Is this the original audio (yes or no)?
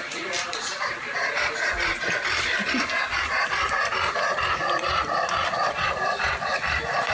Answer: no